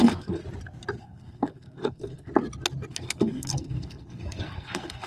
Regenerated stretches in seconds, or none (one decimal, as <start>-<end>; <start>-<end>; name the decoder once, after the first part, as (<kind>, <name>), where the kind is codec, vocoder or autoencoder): 0.0-0.4 (codec, SNAC); 1.0-2.3; 2.9-5.1